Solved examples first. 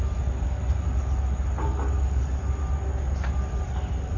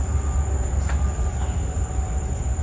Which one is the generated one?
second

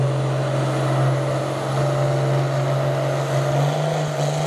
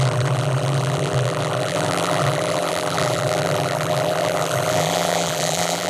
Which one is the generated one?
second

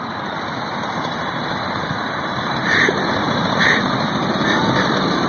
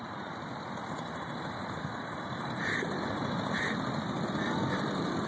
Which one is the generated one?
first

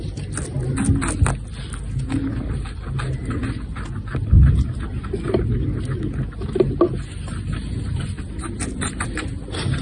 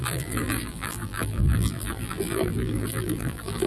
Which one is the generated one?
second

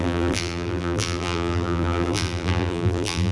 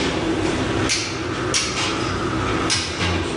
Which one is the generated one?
first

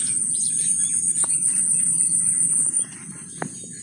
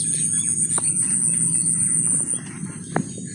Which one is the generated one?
first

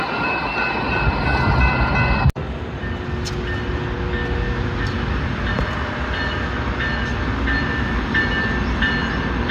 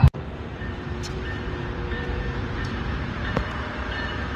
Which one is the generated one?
second